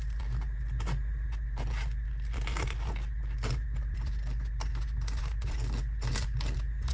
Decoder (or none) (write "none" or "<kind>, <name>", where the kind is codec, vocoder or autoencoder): none